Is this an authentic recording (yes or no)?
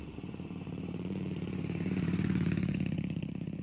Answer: no